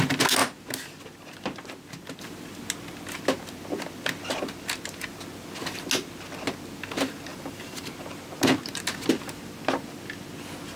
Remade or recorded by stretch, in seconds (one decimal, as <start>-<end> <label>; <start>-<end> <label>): 0.0-7.3 recorded; 7.3-7.9 remade; 7.9-10.8 recorded